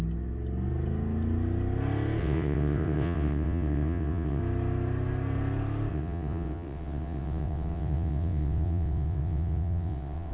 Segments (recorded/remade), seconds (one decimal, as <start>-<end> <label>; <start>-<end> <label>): 0.0-2.2 recorded; 2.2-4.4 remade; 4.4-5.9 recorded; 5.9-10.3 remade